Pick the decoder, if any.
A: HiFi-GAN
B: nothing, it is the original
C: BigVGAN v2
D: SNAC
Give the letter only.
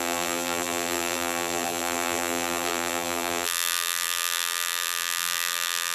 C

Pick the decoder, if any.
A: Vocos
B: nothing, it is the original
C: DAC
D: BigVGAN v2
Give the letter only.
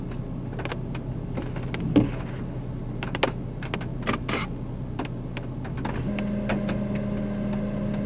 B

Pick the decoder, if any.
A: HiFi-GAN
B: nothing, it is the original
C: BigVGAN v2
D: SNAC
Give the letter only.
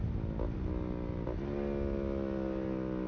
B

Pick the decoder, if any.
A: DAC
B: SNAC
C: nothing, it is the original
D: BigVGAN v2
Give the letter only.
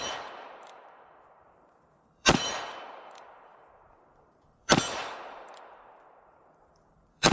D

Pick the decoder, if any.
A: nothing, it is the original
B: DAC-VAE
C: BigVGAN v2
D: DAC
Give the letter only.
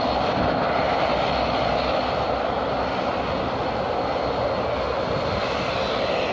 A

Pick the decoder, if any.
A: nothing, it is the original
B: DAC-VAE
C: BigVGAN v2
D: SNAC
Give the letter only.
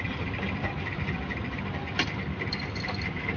C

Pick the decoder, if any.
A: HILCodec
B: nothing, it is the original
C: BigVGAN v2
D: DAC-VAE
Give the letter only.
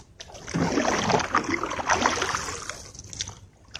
B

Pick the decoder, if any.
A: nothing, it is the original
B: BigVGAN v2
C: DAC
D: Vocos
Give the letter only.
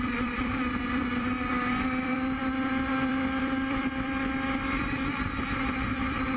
B